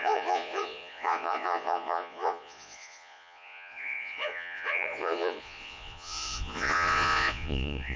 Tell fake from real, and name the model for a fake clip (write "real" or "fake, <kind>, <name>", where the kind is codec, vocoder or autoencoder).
fake, vocoder, Vocos